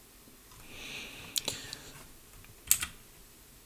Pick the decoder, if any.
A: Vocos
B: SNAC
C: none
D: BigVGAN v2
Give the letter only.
C